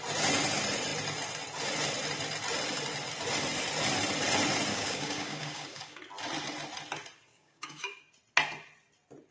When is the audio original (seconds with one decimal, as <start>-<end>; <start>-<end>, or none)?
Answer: 0.0-4.7; 6.0-7.3; 8.0-9.3